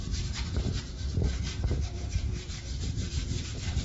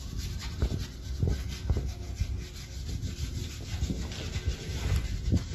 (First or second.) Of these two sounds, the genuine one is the second